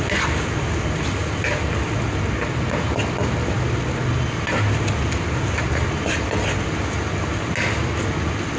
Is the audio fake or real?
real